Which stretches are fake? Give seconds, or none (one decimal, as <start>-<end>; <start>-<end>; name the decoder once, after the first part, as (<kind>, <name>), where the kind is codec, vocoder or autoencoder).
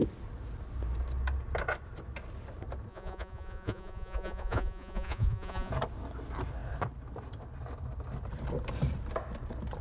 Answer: 2.9-5.7 (vocoder, Vocos)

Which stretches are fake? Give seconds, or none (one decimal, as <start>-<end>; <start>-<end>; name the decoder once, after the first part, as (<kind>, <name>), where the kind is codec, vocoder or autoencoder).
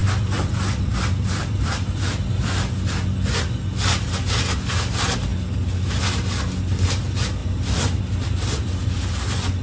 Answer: 0.0-1.7 (vocoder, BigVGAN v2); 7.4-8.0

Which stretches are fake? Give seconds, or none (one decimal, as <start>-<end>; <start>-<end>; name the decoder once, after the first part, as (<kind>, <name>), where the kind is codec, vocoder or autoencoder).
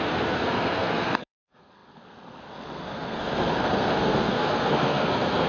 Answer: 0.0-5.5 (codec, SNAC)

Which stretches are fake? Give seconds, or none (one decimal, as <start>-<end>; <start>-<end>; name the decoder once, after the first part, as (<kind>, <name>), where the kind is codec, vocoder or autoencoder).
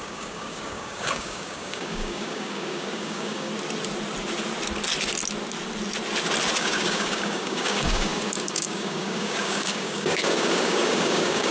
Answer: 0.0-3.5 (codec, DAC); 6.6-11.5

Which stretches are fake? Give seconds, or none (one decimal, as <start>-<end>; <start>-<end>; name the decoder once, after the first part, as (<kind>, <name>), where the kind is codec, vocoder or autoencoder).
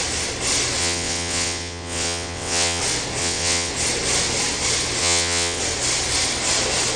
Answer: 0.8-2.8 (vocoder, WaveNeXt); 3.2-3.7; 5.0-5.6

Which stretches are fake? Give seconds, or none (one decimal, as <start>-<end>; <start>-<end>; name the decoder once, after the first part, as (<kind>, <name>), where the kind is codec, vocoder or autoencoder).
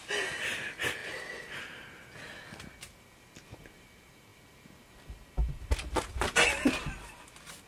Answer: none